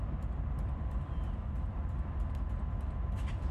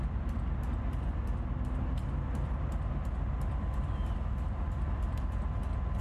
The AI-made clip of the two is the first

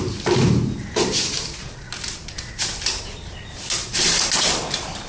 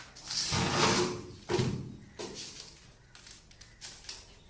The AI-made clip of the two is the first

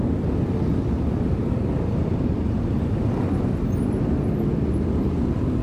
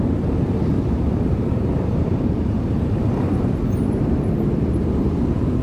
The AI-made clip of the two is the second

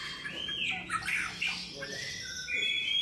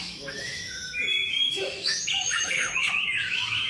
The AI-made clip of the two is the second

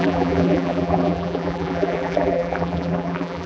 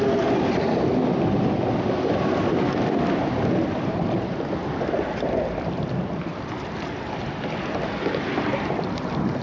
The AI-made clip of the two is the first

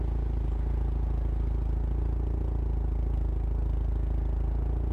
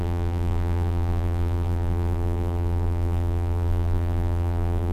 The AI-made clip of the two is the second